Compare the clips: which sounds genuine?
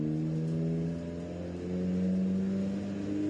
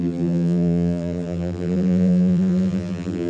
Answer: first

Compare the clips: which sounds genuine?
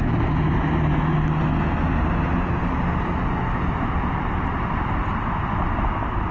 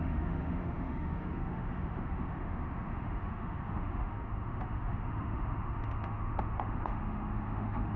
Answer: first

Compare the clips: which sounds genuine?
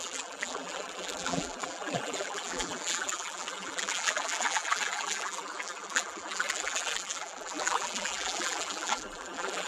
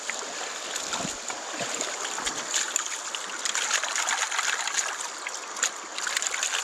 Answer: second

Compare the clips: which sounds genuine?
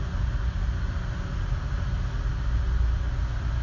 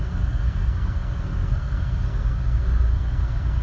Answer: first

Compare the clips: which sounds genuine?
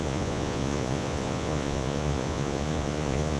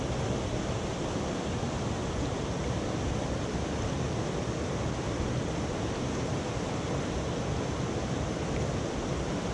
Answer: second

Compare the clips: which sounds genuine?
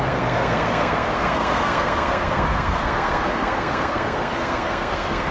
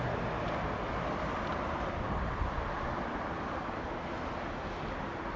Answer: second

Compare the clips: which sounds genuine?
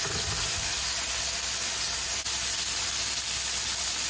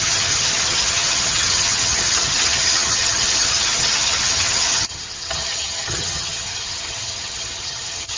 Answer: first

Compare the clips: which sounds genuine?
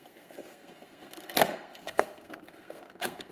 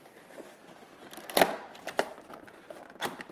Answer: second